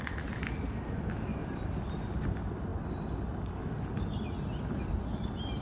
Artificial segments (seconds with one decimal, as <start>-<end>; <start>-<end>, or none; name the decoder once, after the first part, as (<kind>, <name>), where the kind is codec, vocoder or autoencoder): 1.4-1.9 (vocoder, BigVGAN v2)